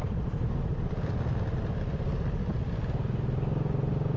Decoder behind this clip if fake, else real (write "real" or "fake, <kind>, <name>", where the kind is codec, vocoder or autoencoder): real